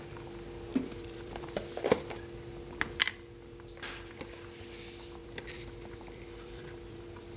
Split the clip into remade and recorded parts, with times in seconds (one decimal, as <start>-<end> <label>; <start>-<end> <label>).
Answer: 0.0-0.7 recorded; 0.7-4.1 remade; 4.1-5.2 recorded; 5.2-7.0 remade; 7.0-7.4 recorded